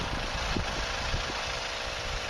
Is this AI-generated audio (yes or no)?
no